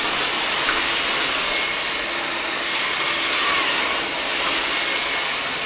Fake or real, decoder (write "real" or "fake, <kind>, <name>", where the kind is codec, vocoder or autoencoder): real